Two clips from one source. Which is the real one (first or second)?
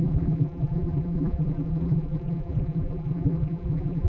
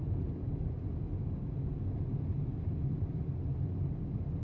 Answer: second